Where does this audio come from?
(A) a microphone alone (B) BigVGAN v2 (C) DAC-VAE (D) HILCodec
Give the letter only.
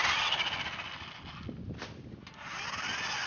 A